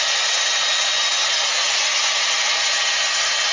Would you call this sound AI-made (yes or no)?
no